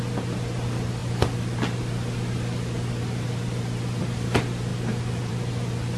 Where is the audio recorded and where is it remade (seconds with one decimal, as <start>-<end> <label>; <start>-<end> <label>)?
0.0-6.0 recorded